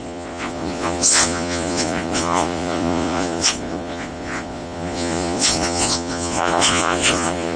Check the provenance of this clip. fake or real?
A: fake